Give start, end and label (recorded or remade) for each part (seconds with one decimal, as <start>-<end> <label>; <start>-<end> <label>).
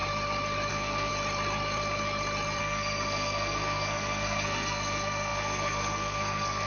0.0-0.7 recorded; 0.7-1.1 remade; 1.1-2.6 recorded; 2.6-6.7 remade